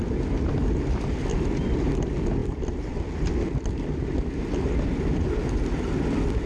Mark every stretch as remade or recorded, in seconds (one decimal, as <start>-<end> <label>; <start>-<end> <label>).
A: 0.0-2.4 recorded; 2.4-3.3 remade; 3.3-6.5 recorded